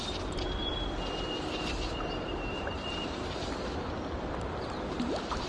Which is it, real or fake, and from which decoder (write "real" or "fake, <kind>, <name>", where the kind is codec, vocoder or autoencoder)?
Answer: real